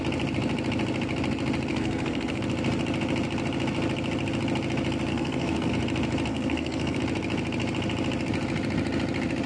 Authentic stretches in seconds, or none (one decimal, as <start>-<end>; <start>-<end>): 0.0-1.7; 2.4-5.1; 5.7-6.3; 7.0-9.5